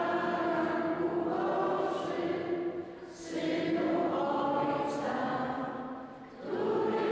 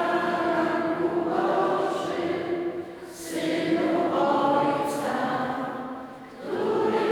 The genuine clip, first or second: first